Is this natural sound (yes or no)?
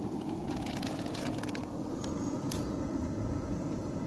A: no